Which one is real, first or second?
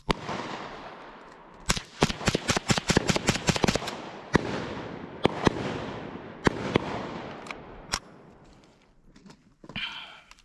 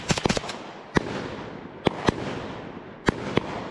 second